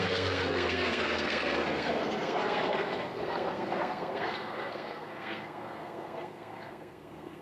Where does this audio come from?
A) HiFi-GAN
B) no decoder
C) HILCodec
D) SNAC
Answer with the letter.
D